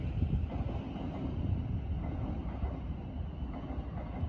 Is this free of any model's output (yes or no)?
yes